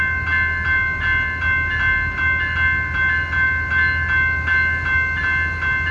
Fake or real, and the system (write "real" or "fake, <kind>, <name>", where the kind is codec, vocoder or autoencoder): real